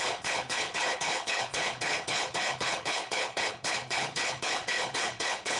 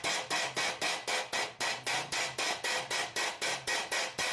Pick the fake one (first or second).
first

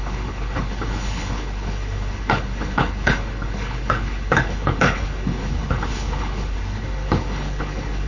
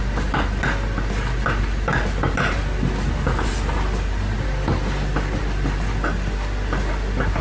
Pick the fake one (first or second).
first